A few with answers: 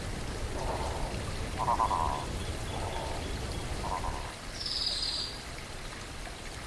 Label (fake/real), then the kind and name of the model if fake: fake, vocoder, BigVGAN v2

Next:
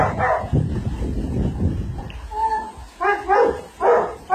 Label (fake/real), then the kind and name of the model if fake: real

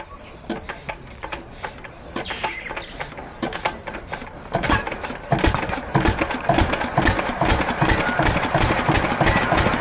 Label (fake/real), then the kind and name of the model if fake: fake, vocoder, BigVGAN v2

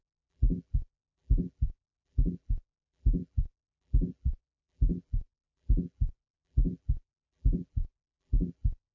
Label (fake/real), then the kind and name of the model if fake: fake, vocoder, BigVGAN v2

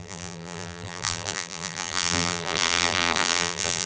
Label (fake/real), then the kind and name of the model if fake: fake, vocoder, BigVGAN v2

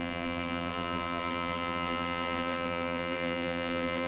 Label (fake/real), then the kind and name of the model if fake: fake, vocoder, BigVGAN v2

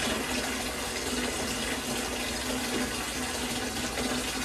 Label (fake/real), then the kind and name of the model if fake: real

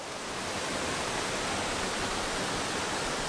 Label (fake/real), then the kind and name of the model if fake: real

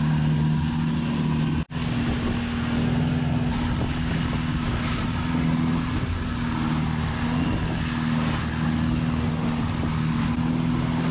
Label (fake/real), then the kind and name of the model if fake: real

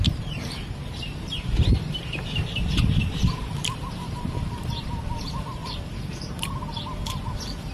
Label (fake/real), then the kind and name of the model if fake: fake, vocoder, BigVGAN v2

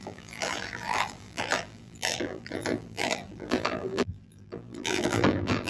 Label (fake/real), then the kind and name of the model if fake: fake, vocoder, BigVGAN v2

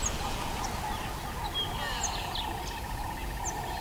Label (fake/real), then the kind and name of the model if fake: real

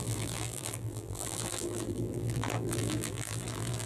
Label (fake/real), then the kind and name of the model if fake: fake, vocoder, BigVGAN v2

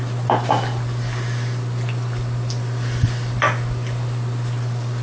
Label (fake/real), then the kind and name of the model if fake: real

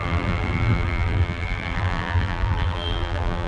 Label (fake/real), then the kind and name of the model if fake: fake, vocoder, BigVGAN v2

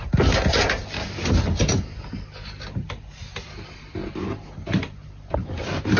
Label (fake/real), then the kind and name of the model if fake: real